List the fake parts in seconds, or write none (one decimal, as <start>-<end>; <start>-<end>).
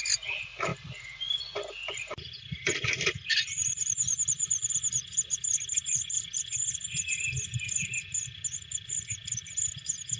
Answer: 0.7-1.4; 2.1-2.9; 3.3-4.8